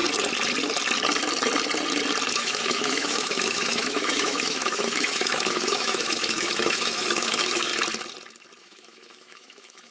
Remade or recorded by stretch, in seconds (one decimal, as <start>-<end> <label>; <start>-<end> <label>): 0.0-2.3 recorded; 2.3-7.7 remade; 7.7-8.6 recorded; 8.6-9.9 remade